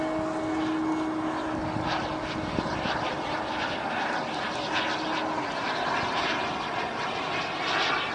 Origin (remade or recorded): recorded